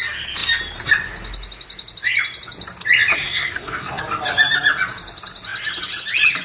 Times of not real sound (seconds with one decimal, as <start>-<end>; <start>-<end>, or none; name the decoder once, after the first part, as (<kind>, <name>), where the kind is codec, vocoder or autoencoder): 3.2-4.0 (codec, SNAC)